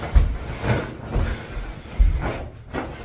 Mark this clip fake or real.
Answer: real